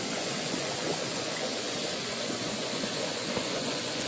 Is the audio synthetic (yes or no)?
yes